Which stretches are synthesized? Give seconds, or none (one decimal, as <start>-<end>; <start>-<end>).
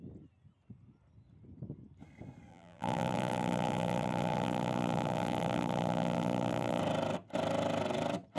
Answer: 2.5-6.8